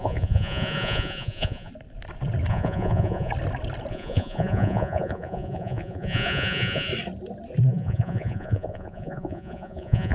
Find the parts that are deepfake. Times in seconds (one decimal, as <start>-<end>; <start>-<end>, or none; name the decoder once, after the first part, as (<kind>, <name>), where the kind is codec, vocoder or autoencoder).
0.0-1.7 (vocoder, Vocos); 2.5-3.3; 3.9-6.9; 7.7-10.1

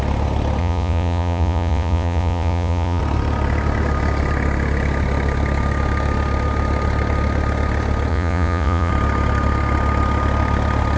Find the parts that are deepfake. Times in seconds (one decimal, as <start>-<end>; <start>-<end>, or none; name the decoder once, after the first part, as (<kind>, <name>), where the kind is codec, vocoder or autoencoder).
0.6-3.0 (vocoder, Vocos); 8.1-8.9

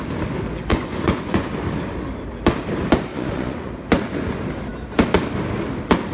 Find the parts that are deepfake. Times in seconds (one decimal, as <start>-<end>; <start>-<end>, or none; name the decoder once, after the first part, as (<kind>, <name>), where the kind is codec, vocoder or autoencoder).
0.7-1.5 (vocoder, Vocos); 3.1-3.7

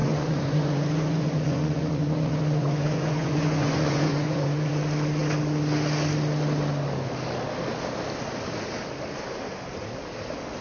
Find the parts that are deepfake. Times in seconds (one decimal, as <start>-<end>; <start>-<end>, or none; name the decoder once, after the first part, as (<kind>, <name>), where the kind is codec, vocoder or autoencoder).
0.0-4.7 (vocoder, Vocos)

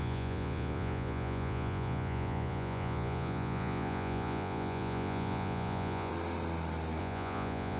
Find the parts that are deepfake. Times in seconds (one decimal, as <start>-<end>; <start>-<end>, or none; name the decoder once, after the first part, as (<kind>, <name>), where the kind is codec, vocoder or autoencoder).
0.0-6.1 (vocoder, Vocos); 7.0-7.8